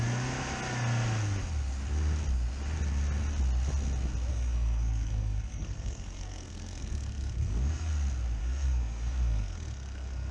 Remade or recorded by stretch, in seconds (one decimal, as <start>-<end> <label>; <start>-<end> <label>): 0.0-4.3 recorded; 4.3-7.9 remade; 7.9-8.4 recorded; 8.4-10.3 remade